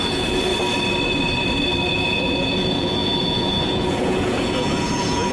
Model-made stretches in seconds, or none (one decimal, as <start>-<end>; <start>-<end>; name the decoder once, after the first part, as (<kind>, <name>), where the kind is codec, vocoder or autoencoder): 0.0-0.5 (vocoder, Vocos); 1.9-5.3